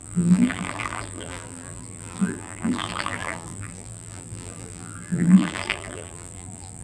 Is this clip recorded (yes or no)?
no